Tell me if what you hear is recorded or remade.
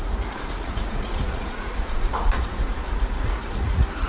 remade